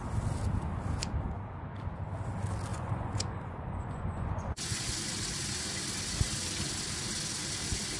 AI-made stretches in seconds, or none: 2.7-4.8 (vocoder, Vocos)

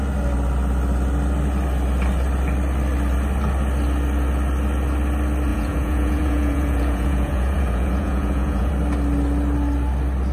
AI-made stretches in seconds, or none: 5.5-8.7 (vocoder, Vocos)

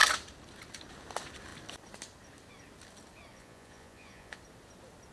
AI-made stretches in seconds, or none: 3.3-4.4 (vocoder, Vocos)

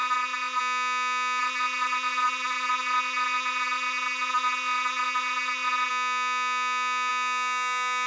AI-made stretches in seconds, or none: 0.0-0.6 (vocoder, Vocos); 1.4-5.9

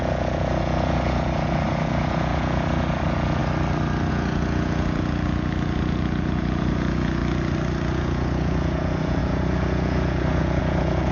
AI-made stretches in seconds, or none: 0.0-3.4 (vocoder, Vocos); 4.1-7.2; 7.9-11.1

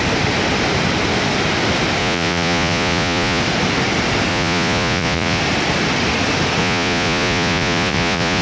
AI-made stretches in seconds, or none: 2.0-3.4 (vocoder, Vocos); 4.3-5.4; 6.6-8.4

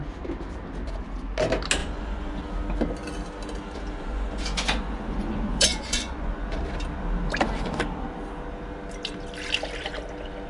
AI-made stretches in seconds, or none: 1.8-2.4 (vocoder, Vocos); 4.1-6.6

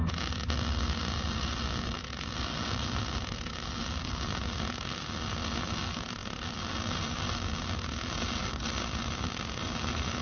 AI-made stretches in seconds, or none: none